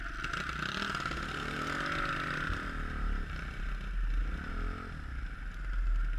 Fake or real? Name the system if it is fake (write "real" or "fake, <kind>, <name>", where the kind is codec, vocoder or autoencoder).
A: real